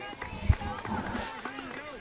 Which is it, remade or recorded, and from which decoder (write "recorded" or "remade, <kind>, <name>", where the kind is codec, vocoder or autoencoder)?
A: recorded